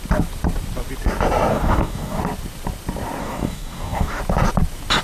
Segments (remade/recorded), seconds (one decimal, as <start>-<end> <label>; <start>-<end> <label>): 0.0-1.5 recorded; 1.5-2.2 remade; 2.2-3.2 recorded; 3.2-4.2 remade; 4.2-5.0 recorded